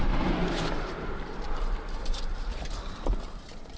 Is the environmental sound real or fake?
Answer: fake